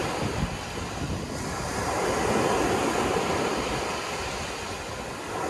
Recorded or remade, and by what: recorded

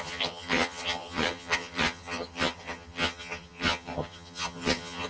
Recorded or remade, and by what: remade, vocoder, HiFi-GAN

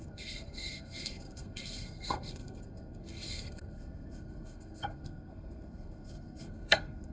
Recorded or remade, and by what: remade, codec, SNAC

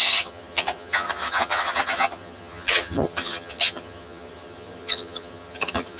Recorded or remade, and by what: remade, vocoder, HiFi-GAN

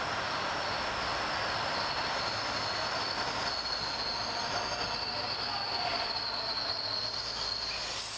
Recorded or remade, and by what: recorded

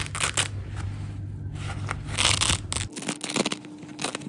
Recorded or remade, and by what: recorded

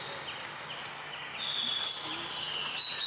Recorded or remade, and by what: recorded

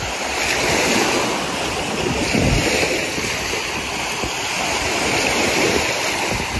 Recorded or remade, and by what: recorded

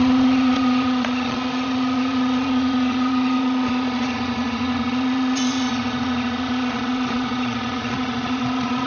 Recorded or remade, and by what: remade, vocoder, Vocos